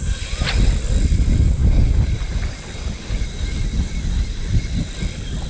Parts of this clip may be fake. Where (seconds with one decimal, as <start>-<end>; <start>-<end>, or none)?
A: none